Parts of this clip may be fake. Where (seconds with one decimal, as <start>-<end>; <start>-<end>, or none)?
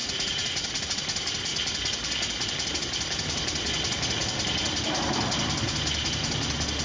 0.0-0.9